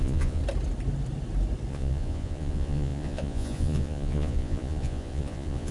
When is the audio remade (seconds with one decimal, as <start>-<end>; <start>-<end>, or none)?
0.0-0.4; 1.7-5.7